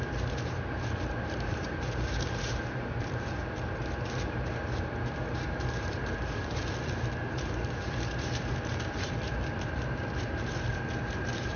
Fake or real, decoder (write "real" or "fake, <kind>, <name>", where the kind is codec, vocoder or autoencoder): fake, vocoder, BigVGAN v2